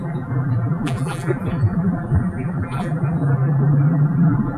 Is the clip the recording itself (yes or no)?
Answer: no